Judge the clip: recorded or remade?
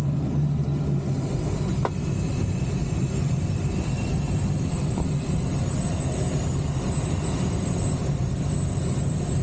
recorded